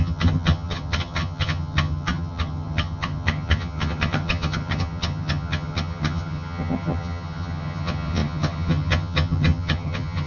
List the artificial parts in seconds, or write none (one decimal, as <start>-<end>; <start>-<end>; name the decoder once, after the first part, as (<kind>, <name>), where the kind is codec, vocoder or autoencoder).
0.0-10.3 (vocoder, HiFi-GAN)